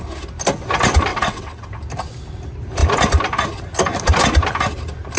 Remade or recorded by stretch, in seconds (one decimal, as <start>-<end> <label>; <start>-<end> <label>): 0.0-1.1 recorded; 1.1-1.7 remade; 1.7-5.2 recorded

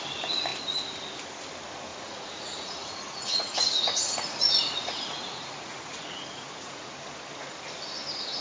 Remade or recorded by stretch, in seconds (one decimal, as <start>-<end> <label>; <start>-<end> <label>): 0.0-1.9 recorded; 1.9-6.9 remade; 6.9-8.4 recorded

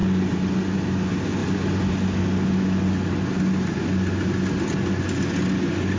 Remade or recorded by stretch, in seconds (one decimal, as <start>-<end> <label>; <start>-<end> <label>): 0.0-6.0 recorded

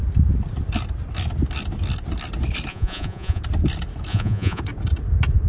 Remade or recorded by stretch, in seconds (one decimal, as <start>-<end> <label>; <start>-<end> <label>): 0.0-2.7 recorded; 2.7-3.4 remade; 3.4-4.1 recorded; 4.1-4.6 remade; 4.6-5.5 recorded

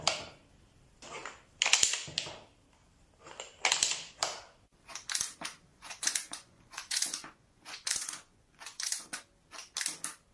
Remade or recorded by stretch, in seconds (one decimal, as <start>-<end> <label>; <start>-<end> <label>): 0.0-5.7 recorded; 5.7-9.2 remade; 9.2-10.3 recorded

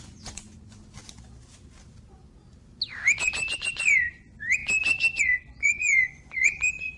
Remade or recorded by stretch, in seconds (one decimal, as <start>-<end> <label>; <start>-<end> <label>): 0.0-0.8 remade; 0.8-3.5 recorded; 3.5-4.6 remade; 4.6-5.2 recorded; 5.2-7.0 remade

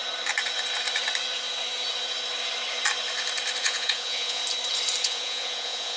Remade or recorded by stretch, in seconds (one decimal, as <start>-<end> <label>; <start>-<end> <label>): 0.0-3.6 recorded; 3.6-4.4 remade; 4.4-5.0 recorded; 5.0-6.0 remade

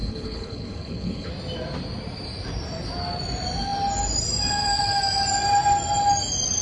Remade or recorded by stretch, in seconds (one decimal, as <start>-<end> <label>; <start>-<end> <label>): 0.0-1.3 remade; 1.3-6.6 recorded